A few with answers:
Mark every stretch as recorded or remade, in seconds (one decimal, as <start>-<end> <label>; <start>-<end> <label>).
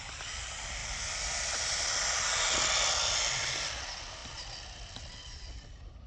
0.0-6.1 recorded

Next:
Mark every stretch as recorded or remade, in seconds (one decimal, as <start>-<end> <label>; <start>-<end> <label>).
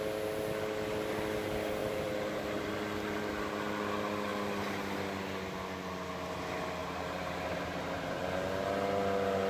0.0-1.8 recorded; 1.8-2.7 remade; 2.7-6.8 recorded; 6.8-8.2 remade; 8.2-9.5 recorded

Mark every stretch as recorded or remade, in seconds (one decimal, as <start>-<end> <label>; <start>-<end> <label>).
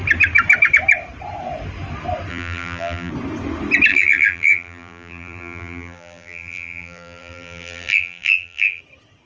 0.0-2.3 recorded; 2.3-3.1 remade; 3.1-3.9 recorded; 3.9-8.8 remade; 8.8-9.3 recorded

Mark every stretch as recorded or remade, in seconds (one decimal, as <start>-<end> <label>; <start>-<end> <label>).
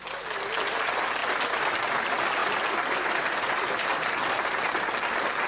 0.0-5.5 recorded